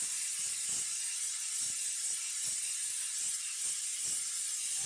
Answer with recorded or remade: recorded